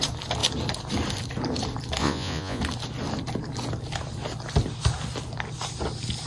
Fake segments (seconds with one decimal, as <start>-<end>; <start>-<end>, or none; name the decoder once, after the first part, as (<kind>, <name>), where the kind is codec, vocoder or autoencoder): 2.0-2.6 (vocoder, Vocos)